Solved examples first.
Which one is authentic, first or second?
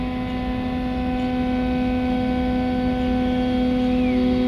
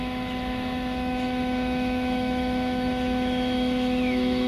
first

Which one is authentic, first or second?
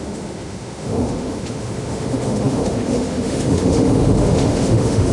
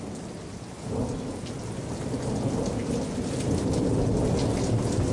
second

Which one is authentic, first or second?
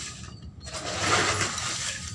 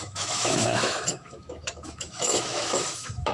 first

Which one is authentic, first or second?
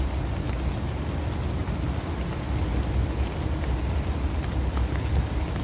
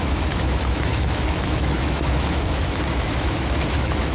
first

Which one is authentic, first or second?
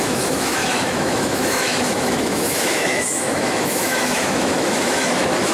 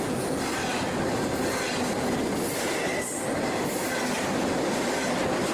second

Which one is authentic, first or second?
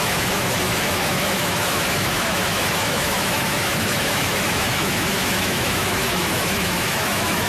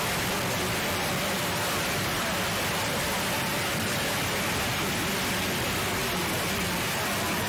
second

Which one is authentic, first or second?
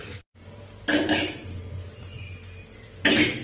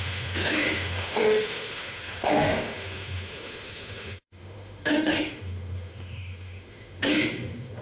first